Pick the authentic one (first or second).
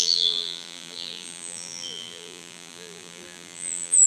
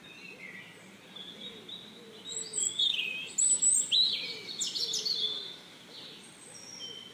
second